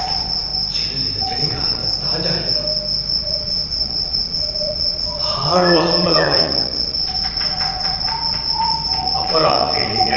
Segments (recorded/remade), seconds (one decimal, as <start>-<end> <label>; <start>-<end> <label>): 0.0-0.5 remade; 0.5-1.2 recorded; 1.2-1.8 remade; 1.8-3.1 recorded; 3.1-10.2 remade